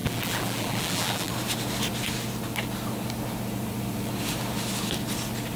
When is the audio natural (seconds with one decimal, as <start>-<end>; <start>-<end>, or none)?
1.3-5.6